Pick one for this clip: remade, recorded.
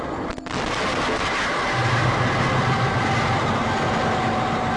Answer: recorded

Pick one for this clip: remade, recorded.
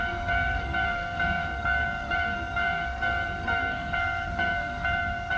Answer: remade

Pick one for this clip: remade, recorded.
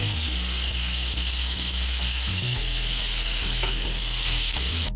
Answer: remade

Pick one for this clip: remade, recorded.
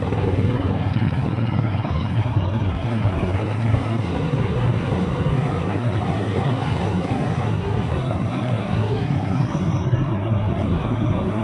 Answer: remade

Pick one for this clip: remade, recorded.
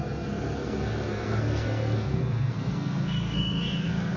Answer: remade